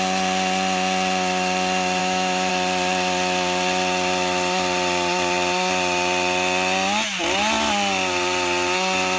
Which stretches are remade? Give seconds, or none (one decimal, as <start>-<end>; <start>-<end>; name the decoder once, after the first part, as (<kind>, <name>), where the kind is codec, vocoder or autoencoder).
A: 2.0-2.5 (autoencoder, DAC-VAE)